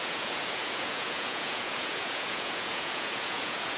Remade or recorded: remade